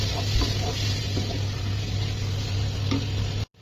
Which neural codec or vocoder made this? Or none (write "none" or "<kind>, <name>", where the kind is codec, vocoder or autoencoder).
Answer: none